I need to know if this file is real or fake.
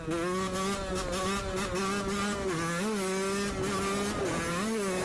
real